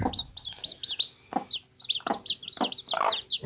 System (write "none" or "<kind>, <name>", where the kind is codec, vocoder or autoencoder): none